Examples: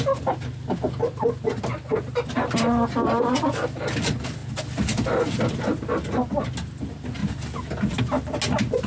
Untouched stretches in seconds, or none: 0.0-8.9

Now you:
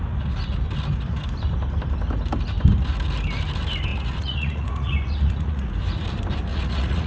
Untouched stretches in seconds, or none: 0.0-3.9; 5.7-6.5

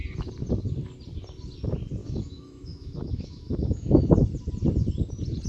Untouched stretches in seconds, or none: 0.0-2.0; 4.1-5.5

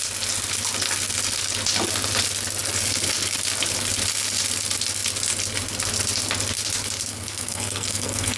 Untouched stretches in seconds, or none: 0.0-7.1

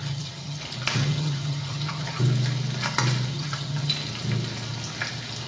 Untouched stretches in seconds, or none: 0.6-1.0; 2.2-3.3; 3.9-5.5

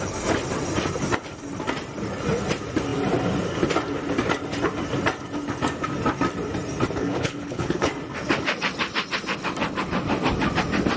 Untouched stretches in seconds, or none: 0.0-7.0; 7.9-11.0

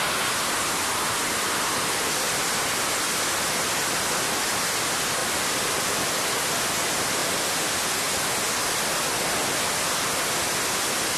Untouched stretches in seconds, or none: 0.0-11.2